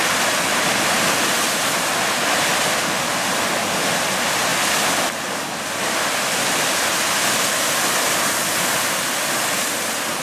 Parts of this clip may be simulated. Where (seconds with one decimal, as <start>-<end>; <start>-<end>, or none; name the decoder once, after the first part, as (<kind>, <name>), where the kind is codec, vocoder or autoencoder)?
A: none